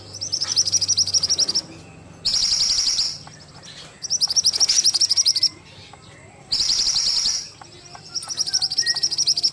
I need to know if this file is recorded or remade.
recorded